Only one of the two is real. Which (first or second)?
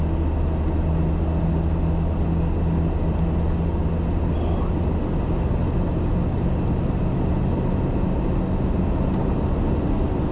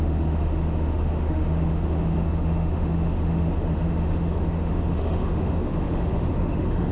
first